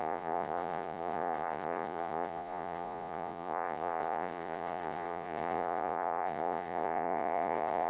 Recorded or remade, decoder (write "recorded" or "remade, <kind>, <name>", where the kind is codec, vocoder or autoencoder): remade, vocoder, Vocos